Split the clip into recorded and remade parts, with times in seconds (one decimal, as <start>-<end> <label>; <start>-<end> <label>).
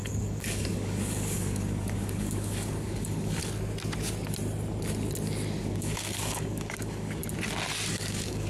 0.0-3.4 remade; 3.4-5.6 recorded; 5.6-7.2 remade; 7.2-7.9 recorded; 7.9-8.5 remade